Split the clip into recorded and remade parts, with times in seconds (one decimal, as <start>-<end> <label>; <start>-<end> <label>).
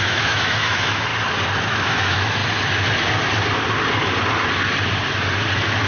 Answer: 0.0-1.1 remade; 1.1-1.6 recorded; 1.6-2.4 remade; 2.4-5.9 recorded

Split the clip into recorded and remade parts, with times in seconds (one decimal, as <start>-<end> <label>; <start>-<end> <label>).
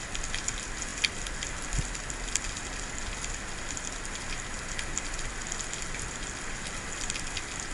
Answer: 0.0-7.7 recorded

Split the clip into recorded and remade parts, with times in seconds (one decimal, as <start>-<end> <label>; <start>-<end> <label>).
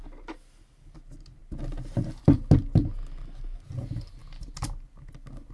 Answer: 0.0-5.5 recorded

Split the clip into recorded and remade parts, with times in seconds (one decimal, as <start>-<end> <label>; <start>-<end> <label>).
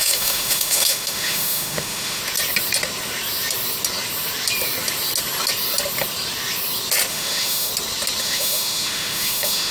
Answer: 0.0-2.2 remade; 2.2-7.1 recorded; 7.1-7.7 remade; 7.7-8.2 recorded; 8.2-9.7 remade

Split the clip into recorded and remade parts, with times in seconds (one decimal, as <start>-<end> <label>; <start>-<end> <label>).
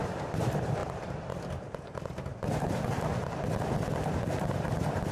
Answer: 0.0-5.1 recorded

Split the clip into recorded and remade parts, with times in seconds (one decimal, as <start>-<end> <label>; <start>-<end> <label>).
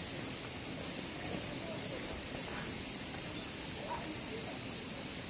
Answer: 0.0-5.3 recorded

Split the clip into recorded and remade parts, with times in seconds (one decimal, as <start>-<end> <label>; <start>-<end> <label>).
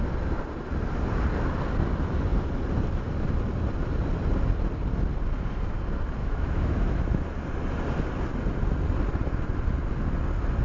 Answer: 0.0-6.2 recorded; 6.2-7.0 remade; 7.0-10.6 recorded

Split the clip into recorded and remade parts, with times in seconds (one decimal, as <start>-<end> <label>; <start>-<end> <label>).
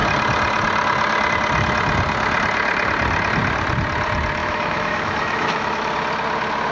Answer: 0.0-4.4 recorded; 4.4-5.8 remade; 5.8-6.7 recorded